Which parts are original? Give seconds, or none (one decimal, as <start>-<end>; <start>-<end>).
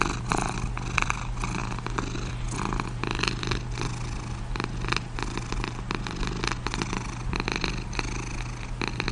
0.0-9.1